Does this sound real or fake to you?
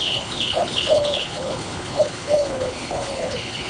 fake